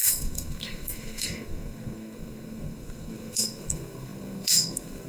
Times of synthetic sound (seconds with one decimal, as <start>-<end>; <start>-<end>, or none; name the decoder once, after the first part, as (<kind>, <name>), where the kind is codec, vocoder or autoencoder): 0.0-5.1 (codec, SNAC)